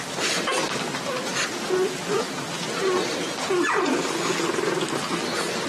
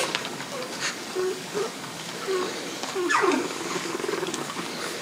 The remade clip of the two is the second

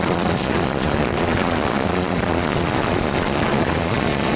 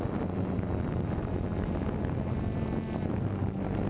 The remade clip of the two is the first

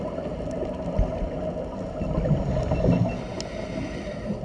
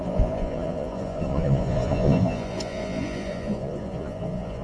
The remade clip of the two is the second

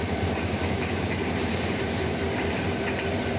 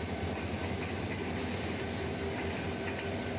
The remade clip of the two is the first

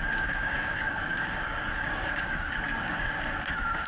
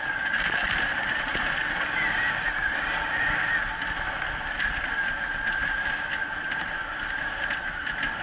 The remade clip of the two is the first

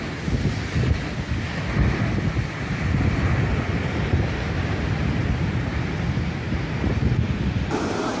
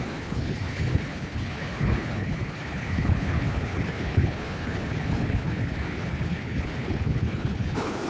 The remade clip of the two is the second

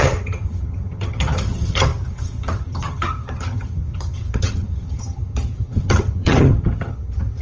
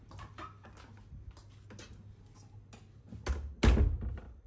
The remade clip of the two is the first